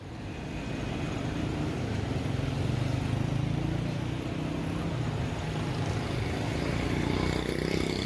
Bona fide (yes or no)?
yes